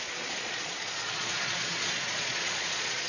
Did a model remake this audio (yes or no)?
yes